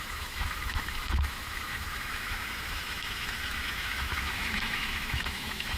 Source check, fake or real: fake